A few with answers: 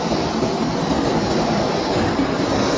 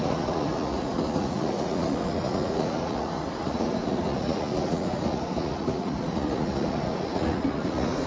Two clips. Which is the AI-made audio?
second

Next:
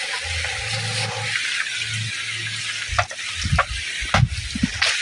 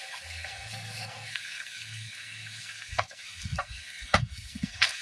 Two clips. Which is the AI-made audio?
second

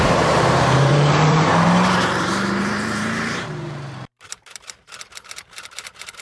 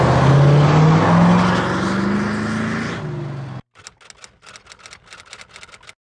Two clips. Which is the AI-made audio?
first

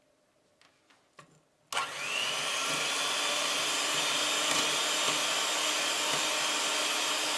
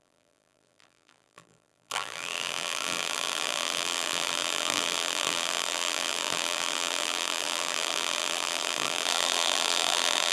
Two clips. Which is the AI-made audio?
second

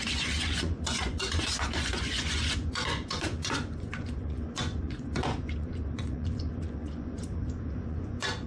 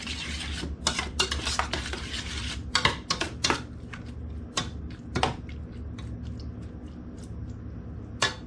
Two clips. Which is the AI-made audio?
first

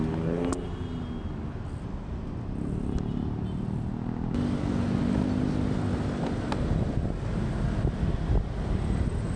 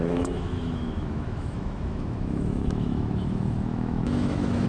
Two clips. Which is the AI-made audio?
second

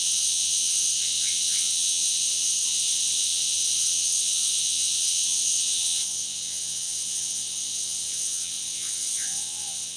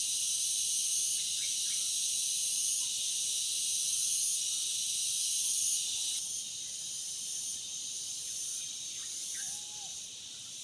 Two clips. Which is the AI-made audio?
first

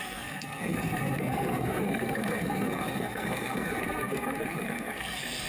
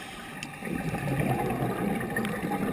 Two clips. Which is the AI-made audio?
first